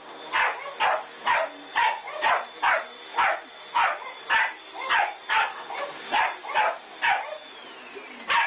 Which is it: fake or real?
real